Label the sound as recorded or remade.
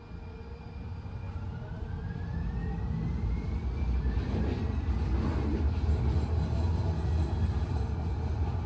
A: recorded